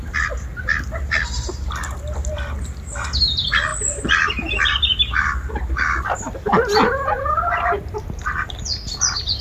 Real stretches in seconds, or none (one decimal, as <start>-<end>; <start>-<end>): 0.0-9.4